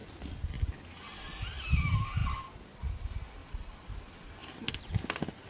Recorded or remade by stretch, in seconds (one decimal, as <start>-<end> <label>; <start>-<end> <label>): 0.0-5.5 recorded